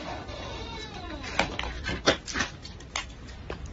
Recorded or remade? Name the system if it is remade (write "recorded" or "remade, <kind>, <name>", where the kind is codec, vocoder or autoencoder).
remade, vocoder, BigVGAN v2